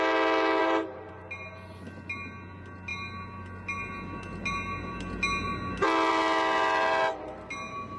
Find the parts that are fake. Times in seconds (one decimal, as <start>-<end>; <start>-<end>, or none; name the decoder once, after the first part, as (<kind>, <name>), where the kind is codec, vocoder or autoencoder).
0.6-1.1 (vocoder, BigVGAN v2)